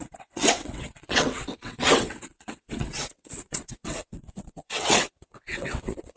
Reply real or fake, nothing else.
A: fake